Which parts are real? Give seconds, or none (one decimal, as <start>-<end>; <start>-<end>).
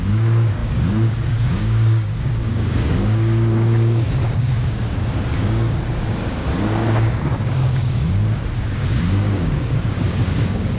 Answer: none